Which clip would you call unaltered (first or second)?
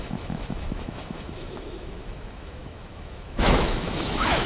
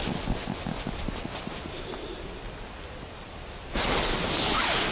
second